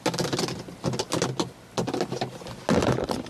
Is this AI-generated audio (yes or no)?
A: no